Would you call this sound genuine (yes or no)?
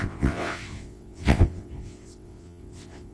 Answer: no